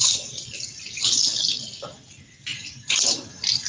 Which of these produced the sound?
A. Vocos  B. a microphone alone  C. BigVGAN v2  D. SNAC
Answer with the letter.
B